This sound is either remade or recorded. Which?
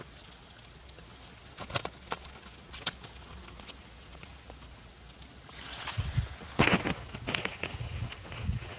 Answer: remade